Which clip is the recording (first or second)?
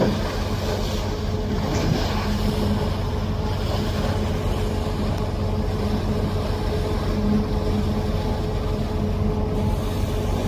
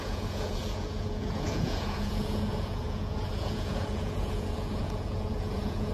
first